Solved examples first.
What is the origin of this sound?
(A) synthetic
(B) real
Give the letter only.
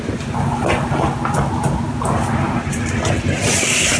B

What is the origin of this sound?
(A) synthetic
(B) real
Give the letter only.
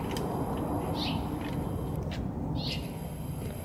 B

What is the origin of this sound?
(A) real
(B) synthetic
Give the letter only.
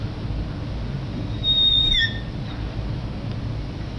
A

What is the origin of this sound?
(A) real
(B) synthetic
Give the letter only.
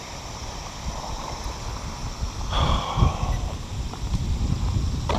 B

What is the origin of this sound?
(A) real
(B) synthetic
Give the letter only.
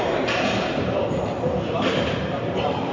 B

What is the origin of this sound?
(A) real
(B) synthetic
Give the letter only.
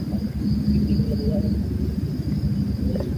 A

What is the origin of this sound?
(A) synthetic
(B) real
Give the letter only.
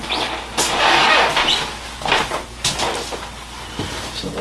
B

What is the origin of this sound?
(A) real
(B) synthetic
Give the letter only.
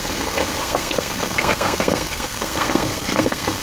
B